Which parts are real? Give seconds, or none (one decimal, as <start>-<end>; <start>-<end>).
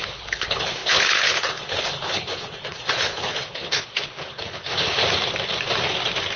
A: 5.0-6.4